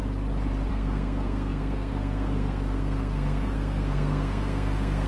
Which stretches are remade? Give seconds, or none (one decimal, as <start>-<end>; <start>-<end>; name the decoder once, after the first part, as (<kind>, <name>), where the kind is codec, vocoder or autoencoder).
0.7-5.1 (codec, SNAC)

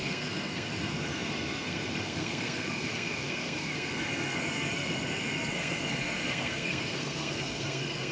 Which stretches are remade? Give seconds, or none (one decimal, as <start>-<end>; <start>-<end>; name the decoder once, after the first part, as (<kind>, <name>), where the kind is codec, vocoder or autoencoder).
0.0-8.1 (codec, SNAC)

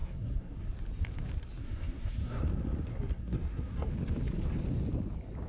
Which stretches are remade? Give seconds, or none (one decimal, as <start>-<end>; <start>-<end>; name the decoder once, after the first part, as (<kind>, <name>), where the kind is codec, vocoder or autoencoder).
0.0-0.7 (codec, SNAC); 1.6-2.4; 2.9-3.9

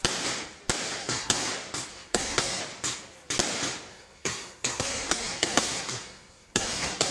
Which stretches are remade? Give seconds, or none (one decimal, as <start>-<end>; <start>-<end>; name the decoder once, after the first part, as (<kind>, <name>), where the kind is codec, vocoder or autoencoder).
1.0-1.5 (codec, SNAC); 1.9-2.6; 3.9-7.1

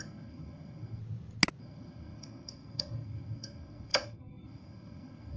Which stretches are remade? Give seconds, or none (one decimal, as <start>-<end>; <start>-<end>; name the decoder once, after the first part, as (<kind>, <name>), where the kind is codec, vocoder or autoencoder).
0.0-1.0 (codec, SNAC); 1.6-5.4